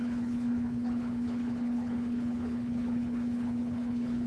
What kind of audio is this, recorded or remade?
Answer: remade